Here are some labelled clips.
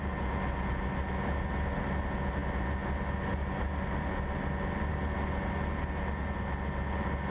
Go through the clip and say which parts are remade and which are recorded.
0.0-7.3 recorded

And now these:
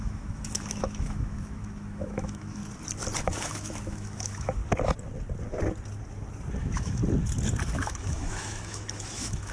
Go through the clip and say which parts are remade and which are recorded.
0.0-2.6 remade; 2.6-3.2 recorded; 3.2-4.6 remade; 4.6-6.6 recorded; 6.6-7.0 remade; 7.0-7.6 recorded; 7.6-9.5 remade

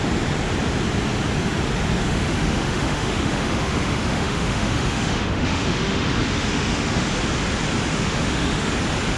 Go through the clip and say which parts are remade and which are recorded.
0.0-2.0 recorded; 2.0-7.1 remade; 7.1-7.9 recorded; 7.9-8.7 remade; 8.7-9.2 recorded

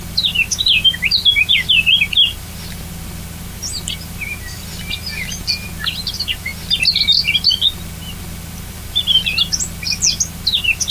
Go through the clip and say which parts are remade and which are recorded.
0.0-10.9 recorded

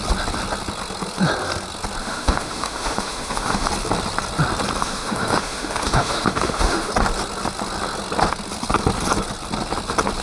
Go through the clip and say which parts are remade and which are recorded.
0.0-2.0 recorded; 2.0-3.7 remade; 3.7-4.8 recorded; 4.8-6.9 remade; 6.9-10.2 recorded

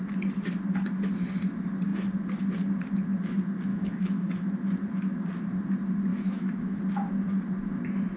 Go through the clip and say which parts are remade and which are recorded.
0.0-3.7 recorded; 3.7-4.3 remade; 4.3-6.1 recorded; 6.1-6.8 remade; 6.8-8.2 recorded

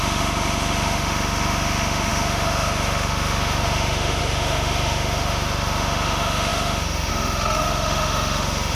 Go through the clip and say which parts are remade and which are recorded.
0.0-8.7 remade